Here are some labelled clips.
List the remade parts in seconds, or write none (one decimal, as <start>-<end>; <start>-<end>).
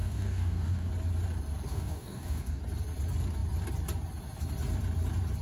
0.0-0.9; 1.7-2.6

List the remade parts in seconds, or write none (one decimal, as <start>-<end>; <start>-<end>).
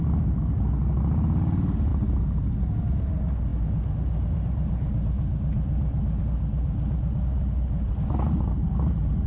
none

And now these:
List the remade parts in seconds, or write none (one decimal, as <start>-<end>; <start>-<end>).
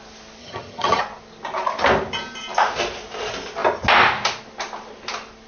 0.4-1.0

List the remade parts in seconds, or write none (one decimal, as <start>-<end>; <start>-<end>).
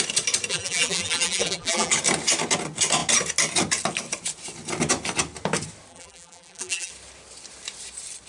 0.5-1.9; 5.9-6.9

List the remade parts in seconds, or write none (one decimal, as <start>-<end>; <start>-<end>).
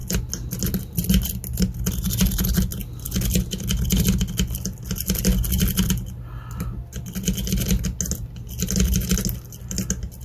none